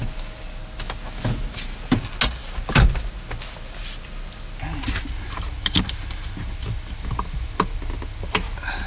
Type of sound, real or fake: real